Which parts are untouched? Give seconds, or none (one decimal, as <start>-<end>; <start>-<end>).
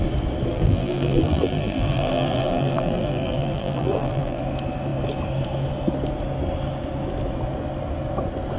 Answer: 0.0-0.5; 4.4-8.6